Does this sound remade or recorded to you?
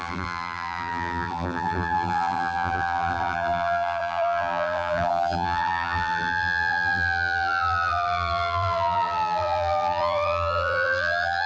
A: remade